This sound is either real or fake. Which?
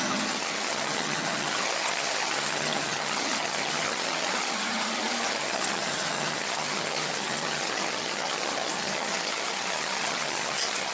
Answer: fake